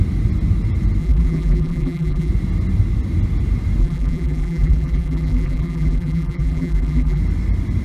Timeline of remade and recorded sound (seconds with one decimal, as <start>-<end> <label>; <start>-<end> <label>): 0.0-1.0 recorded; 1.0-2.3 remade; 2.3-3.8 recorded; 3.8-7.2 remade; 7.2-7.8 recorded